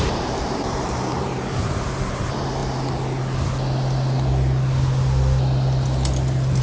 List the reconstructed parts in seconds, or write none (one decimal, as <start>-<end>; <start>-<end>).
0.0-2.6